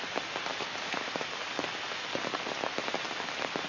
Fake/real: real